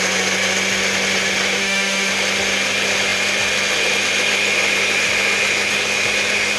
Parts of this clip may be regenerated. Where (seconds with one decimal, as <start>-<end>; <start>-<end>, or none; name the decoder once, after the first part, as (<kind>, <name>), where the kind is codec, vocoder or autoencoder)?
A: 1.6-2.1 (autoencoder, DAC-VAE)